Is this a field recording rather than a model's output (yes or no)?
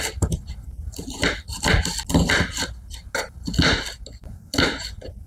yes